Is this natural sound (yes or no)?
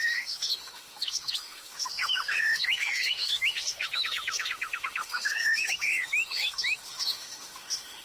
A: no